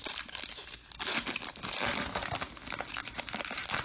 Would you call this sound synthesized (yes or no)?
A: no